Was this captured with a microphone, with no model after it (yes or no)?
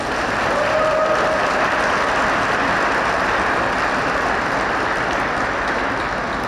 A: yes